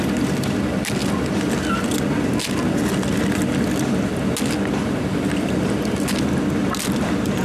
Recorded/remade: recorded